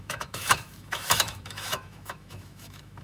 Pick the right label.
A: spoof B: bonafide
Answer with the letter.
A